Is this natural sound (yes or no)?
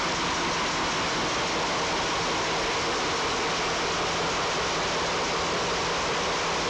yes